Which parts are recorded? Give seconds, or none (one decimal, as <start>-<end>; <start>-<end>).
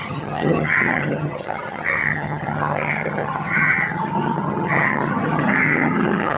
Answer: none